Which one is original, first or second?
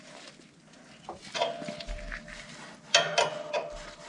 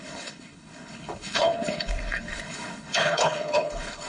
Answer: first